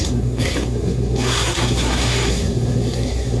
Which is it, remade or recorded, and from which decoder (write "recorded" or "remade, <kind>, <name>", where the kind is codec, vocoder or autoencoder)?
remade, codec, SNAC